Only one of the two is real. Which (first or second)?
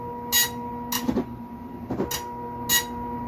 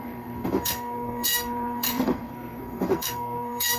first